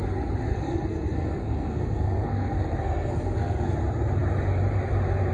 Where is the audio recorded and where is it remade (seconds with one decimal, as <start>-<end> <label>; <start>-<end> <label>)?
0.0-0.5 recorded; 0.5-3.7 remade; 3.7-5.3 recorded